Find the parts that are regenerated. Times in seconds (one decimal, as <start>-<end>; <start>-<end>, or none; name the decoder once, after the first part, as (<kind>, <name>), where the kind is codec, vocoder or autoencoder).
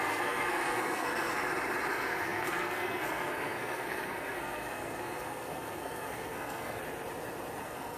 0.0-1.3 (codec, SNAC); 1.9-6.8; 7.6-8.0